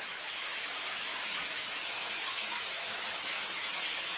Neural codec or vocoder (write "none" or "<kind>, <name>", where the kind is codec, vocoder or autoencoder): autoencoder, DAC-VAE